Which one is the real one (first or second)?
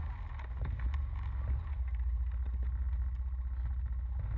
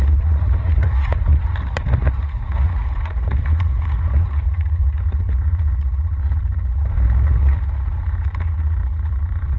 first